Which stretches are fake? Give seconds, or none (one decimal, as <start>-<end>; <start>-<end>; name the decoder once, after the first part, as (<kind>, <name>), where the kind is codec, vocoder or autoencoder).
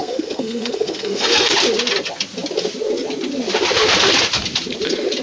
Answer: 0.0-1.5 (codec, SNAC)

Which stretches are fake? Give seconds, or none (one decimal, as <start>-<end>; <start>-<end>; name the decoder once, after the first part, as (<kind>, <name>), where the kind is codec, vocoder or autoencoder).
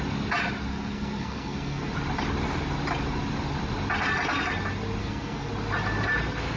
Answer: 0.7-1.9 (codec, SNAC); 5.0-5.5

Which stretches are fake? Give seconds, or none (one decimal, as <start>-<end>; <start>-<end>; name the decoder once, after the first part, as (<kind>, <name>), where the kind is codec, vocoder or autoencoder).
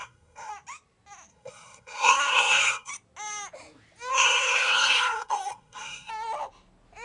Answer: 0.0-0.5 (codec, SNAC); 1.3-2.9; 4.1-6.1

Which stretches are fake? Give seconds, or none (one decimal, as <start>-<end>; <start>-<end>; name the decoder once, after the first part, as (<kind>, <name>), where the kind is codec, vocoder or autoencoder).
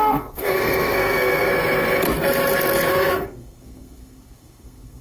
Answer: 0.0-1.5 (codec, SNAC); 2.9-5.0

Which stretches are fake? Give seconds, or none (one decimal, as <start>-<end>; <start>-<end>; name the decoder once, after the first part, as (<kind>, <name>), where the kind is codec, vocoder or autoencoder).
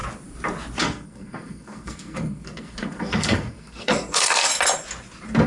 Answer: 0.8-4.5 (codec, SNAC)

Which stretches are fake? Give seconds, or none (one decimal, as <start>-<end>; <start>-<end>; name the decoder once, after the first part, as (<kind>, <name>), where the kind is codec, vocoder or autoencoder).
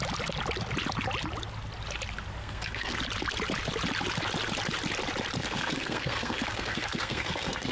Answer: 2.4-3.0 (codec, SNAC); 5.4-7.7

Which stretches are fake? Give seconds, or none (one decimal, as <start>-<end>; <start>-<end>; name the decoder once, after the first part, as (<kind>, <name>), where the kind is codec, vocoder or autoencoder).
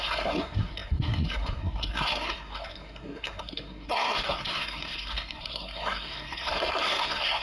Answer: 0.0-7.4 (codec, SNAC)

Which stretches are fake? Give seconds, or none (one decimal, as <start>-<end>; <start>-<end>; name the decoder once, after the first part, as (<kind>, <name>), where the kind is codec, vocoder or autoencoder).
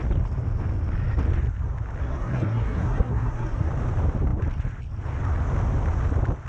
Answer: 2.0-3.7 (codec, SNAC)